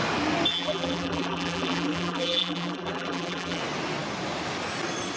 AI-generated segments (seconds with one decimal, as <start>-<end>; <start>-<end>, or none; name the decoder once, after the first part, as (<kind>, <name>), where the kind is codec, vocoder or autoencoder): 0.5-3.6 (vocoder, BigVGAN v2)